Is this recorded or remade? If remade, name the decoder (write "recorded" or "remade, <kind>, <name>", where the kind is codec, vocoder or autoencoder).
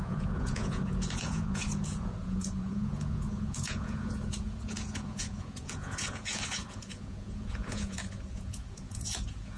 remade, vocoder, Vocos